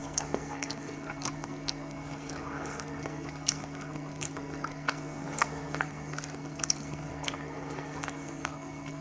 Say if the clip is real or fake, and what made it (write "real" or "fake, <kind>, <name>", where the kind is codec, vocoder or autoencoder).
fake, codec, SNAC